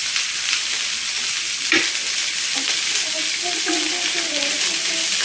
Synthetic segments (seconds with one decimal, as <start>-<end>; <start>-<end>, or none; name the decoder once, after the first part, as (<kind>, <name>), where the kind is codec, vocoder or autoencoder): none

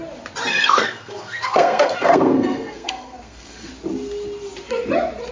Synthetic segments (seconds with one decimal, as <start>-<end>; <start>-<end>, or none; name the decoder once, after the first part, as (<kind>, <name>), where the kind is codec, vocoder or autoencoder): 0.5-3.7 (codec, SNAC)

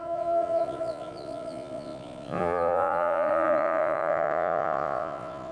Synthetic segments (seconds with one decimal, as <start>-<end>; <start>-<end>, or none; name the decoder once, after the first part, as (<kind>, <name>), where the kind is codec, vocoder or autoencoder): 0.0-5.5 (vocoder, Vocos)